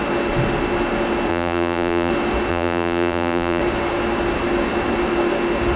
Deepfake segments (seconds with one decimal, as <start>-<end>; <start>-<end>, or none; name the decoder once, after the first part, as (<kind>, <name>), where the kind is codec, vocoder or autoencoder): 1.3-2.1 (vocoder, BigVGAN v2); 2.5-3.6